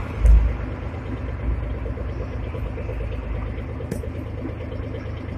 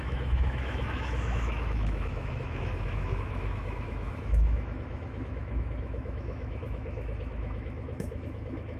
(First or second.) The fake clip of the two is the second